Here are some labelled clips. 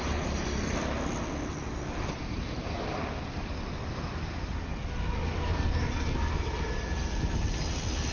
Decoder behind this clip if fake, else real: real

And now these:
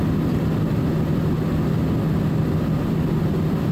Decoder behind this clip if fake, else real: real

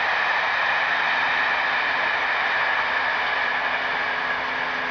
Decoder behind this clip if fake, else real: real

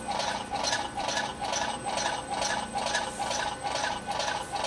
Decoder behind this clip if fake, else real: real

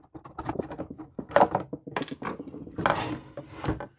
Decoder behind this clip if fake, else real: real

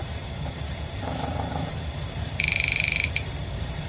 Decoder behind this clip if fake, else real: fake, vocoder, BigVGAN v2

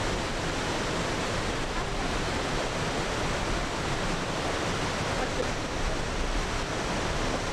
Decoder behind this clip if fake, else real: real